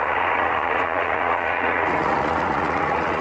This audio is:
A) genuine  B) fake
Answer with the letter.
B